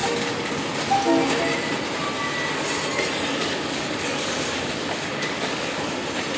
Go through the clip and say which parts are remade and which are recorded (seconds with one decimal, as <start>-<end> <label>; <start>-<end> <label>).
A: 0.0-0.6 remade; 0.6-3.3 recorded; 3.3-6.0 remade; 6.0-6.4 recorded